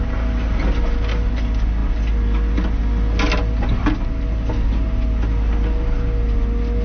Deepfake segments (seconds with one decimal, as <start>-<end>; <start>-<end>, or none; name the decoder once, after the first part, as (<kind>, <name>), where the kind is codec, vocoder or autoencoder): none

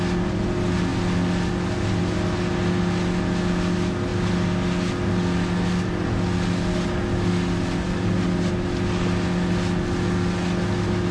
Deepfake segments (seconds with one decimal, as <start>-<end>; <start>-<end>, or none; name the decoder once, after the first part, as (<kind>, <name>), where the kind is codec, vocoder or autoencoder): none